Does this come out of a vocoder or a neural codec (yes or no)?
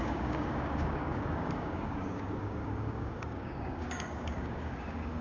yes